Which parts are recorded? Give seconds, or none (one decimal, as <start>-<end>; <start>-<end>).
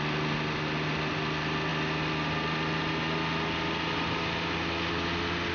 0.0-5.5